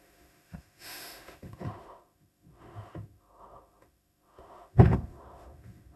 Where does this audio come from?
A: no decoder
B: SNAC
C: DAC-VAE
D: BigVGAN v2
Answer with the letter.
C